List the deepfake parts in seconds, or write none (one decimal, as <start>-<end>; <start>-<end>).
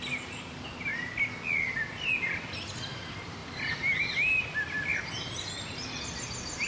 none